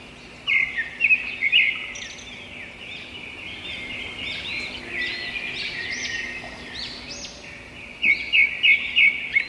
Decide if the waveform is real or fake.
real